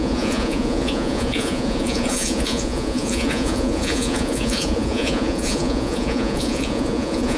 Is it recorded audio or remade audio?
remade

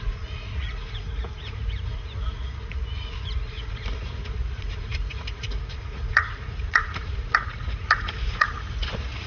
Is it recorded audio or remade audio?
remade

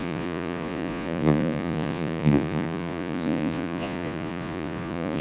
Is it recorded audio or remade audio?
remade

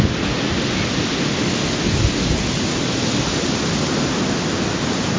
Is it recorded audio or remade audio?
recorded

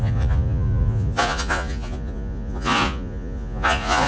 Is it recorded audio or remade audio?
remade